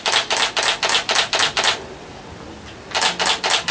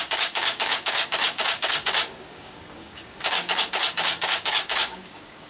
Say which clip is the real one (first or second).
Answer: first